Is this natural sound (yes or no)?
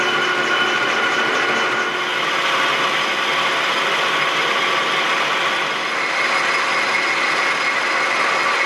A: yes